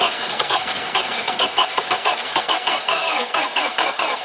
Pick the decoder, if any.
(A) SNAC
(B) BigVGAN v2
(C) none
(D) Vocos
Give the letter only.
A